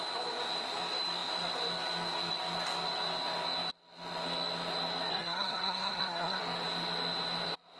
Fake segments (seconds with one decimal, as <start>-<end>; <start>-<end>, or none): 5.1-6.4